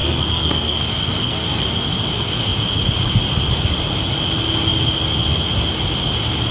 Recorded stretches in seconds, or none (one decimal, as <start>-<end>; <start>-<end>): 2.0-6.5